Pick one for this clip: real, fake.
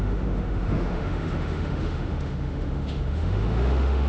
fake